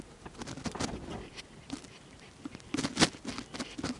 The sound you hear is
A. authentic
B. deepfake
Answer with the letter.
A